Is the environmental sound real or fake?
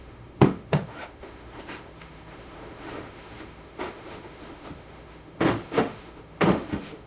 fake